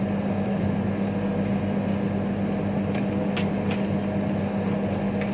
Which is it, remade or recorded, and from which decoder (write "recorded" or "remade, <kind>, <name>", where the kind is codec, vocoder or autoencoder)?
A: recorded